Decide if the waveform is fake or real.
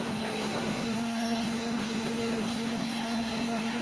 fake